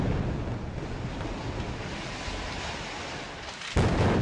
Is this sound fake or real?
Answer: real